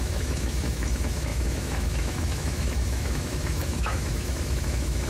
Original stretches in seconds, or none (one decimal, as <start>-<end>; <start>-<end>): none